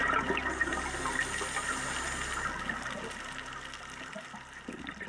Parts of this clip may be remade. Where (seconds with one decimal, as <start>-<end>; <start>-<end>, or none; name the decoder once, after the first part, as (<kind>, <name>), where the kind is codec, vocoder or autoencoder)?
none